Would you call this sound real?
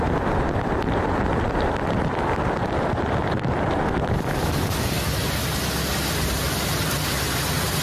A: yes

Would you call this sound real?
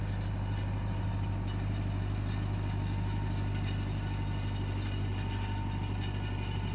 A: yes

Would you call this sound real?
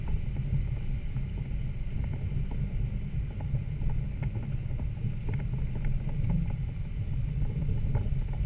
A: yes